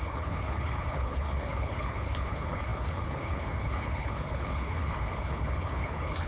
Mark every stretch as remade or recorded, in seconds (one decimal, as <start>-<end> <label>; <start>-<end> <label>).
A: 0.0-6.3 remade